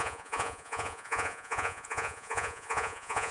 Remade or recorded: remade